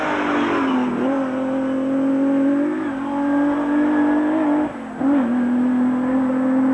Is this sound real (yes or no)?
yes